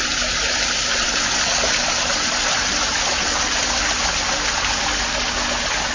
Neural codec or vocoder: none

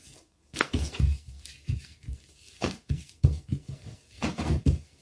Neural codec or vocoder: codec, SNAC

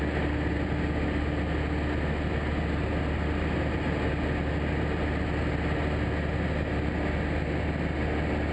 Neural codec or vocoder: none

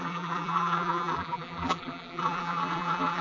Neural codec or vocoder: vocoder, BigVGAN v2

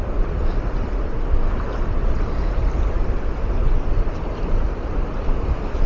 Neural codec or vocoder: none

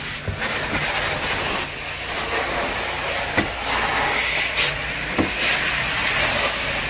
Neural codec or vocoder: none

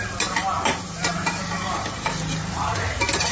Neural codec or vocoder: none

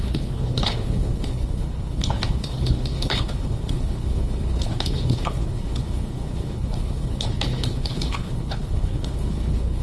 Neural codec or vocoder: codec, HILCodec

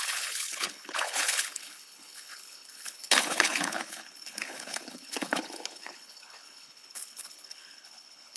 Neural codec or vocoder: codec, HILCodec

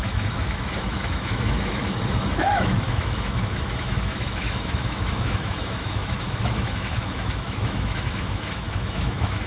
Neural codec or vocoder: autoencoder, DAC-VAE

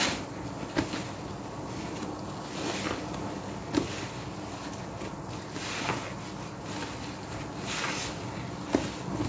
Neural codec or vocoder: none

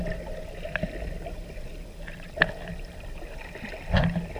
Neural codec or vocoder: none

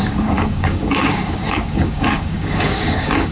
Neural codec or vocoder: codec, DAC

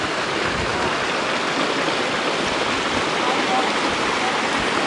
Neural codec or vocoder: none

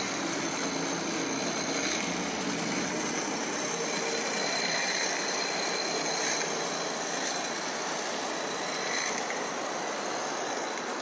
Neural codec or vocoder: none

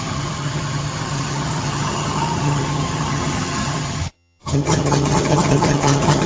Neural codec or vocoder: vocoder, HiFi-GAN